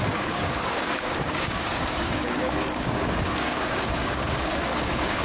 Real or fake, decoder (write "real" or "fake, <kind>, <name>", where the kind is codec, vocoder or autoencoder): fake, codec, DAC